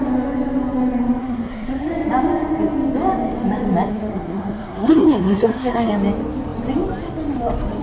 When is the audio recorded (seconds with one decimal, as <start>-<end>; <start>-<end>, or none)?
0.0-1.2; 1.9-3.9; 5.9-7.8